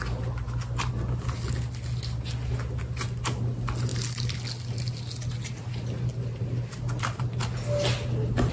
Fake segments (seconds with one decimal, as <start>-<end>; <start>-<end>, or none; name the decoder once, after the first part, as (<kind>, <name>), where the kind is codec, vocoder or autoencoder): none